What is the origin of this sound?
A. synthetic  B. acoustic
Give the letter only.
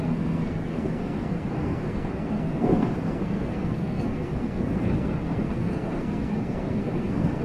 A